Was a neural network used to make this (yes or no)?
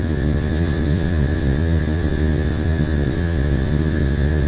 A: yes